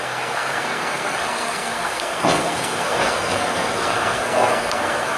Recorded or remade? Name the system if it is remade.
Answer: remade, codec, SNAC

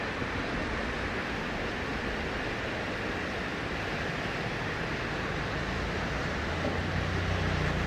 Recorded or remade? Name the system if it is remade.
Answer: recorded